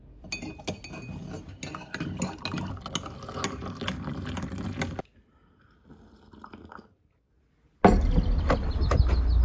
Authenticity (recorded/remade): recorded